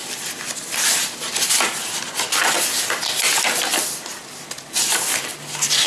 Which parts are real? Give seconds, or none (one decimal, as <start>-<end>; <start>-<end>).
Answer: 0.0-5.9